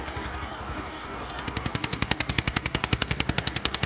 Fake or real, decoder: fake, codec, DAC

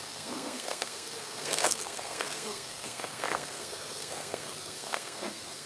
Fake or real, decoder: fake, codec, SNAC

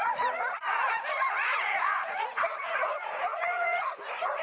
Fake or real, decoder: fake, vocoder, Vocos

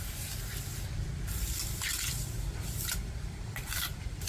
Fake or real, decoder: fake, vocoder, BigVGAN v2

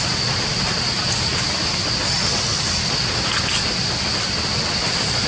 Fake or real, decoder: real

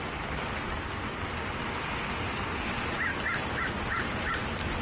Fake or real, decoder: real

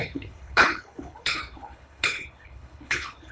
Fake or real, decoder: fake, codec, HILCodec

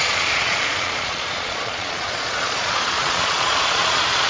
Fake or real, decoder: fake, vocoder, Vocos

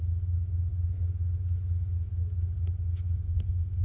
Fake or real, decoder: real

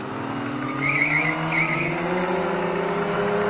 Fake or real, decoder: real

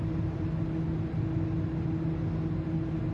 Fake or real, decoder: real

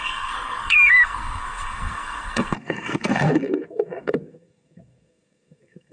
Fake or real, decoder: fake, codec, SNAC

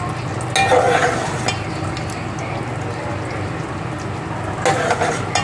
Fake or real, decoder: real